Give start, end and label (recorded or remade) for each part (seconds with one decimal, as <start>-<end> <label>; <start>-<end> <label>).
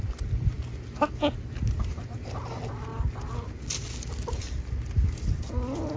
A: 0.0-6.0 recorded